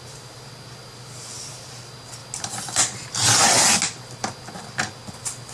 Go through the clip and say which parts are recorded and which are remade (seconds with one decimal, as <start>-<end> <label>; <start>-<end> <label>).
0.0-5.5 recorded